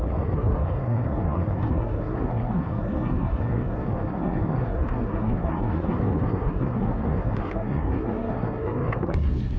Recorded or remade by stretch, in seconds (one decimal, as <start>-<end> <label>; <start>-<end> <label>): 0.0-9.6 remade